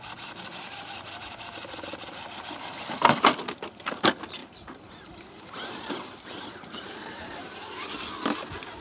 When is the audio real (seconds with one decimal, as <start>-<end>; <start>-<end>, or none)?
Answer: 0.0-4.4; 7.9-8.8